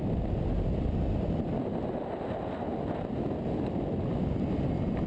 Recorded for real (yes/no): yes